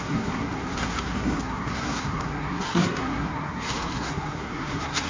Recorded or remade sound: remade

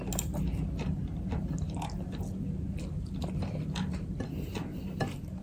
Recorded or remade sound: recorded